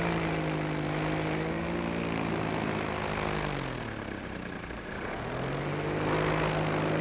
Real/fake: real